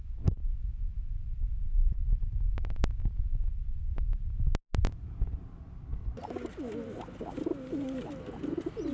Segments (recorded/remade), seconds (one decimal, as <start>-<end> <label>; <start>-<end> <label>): 0.0-8.9 recorded